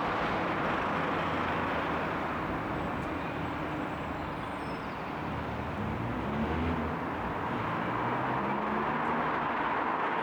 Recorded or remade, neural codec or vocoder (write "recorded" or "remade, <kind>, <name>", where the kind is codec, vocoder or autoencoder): recorded